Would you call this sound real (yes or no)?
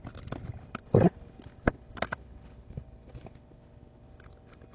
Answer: yes